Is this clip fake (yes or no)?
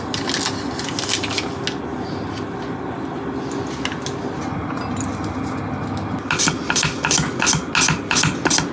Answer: no